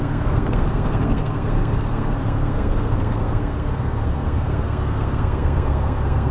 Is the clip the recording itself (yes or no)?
no